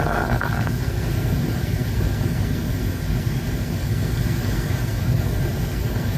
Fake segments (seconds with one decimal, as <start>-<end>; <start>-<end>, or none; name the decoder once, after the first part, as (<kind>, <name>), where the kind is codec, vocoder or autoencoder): 0.0-6.2 (codec, SNAC)